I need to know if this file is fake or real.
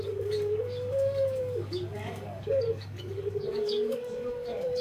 fake